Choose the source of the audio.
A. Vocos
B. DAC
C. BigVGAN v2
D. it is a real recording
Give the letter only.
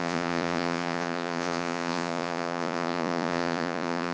A